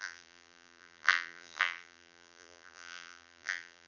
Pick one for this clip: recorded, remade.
remade